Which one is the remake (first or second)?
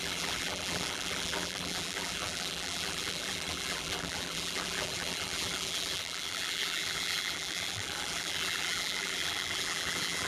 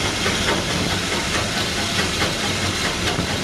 first